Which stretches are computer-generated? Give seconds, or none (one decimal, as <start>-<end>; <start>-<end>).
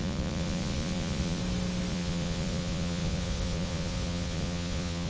0.0-1.4; 1.9-5.1